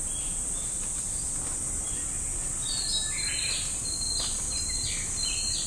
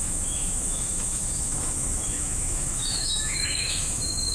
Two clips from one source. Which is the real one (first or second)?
first